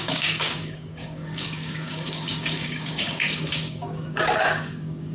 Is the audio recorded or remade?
remade